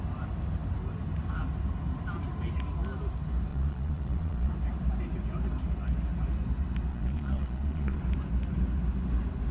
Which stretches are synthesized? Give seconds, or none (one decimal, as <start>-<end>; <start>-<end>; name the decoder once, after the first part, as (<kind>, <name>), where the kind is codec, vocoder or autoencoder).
3.5-4.5 (vocoder, Vocos); 6.9-8.0